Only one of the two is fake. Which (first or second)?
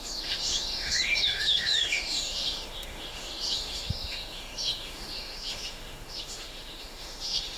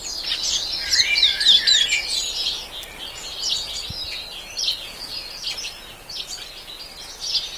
first